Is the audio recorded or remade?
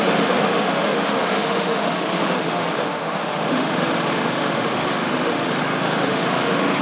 remade